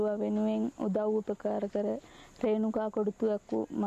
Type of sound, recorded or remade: recorded